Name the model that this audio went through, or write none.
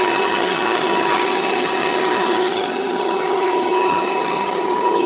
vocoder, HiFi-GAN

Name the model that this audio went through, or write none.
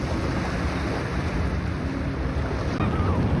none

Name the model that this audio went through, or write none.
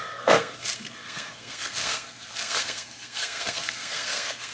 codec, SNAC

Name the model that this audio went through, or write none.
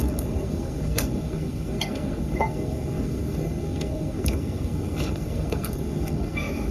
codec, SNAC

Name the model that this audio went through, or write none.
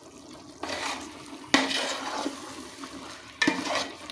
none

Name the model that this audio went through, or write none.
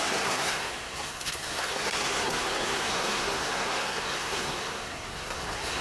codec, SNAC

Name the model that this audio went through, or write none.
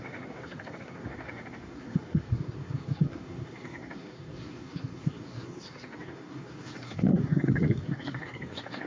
codec, SNAC